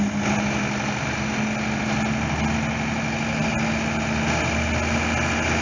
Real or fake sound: real